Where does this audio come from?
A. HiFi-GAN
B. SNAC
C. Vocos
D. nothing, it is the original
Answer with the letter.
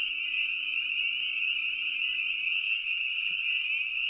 D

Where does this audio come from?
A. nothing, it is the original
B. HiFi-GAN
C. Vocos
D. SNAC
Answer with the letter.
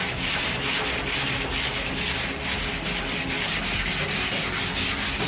A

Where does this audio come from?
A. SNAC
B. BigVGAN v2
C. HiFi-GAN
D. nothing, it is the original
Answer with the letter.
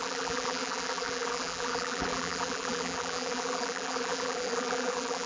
B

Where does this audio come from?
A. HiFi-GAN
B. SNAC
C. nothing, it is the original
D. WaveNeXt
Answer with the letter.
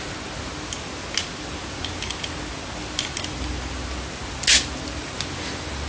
C